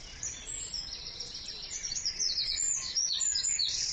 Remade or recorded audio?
remade